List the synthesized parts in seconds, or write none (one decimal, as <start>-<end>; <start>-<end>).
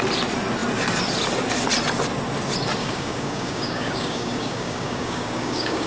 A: 2.8-5.9